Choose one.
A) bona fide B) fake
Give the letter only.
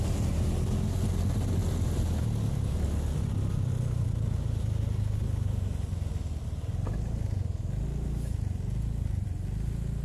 A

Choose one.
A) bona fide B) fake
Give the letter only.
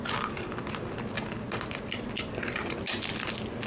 A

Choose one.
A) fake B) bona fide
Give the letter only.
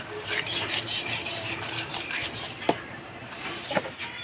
A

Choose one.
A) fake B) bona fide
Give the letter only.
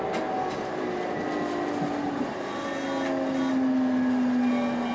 B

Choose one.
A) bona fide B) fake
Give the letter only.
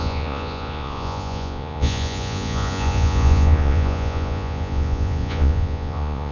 B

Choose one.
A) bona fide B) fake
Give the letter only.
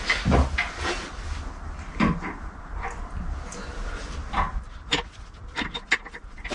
A